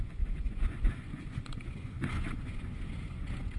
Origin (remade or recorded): remade